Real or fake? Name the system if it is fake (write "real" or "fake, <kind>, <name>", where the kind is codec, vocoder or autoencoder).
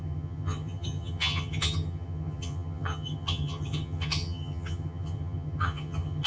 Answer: fake, vocoder, HiFi-GAN